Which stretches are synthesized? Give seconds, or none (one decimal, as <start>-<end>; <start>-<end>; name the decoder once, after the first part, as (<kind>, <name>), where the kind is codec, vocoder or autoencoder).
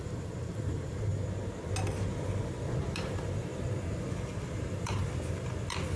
0.0-1.1 (vocoder, BigVGAN v2); 2.7-3.5; 4.1-5.0